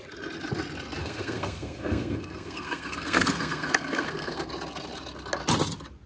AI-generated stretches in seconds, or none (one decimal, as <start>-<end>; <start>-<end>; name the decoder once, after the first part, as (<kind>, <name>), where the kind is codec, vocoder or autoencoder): 1.0-4.5 (codec, SNAC)